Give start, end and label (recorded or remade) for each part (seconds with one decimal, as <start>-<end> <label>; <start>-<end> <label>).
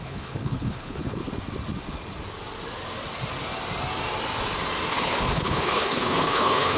0.0-1.2 remade; 1.2-4.9 recorded; 4.9-6.8 remade